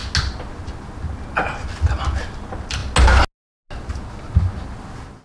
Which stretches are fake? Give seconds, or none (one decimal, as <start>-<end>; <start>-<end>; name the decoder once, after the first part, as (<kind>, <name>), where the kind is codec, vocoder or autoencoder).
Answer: none